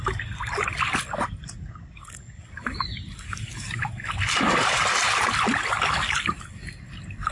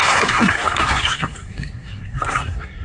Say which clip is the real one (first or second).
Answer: first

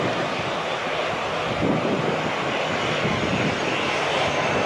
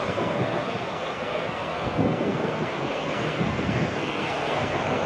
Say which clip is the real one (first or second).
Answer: first